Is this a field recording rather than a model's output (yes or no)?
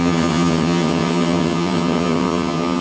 no